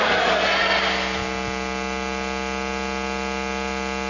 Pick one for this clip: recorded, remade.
recorded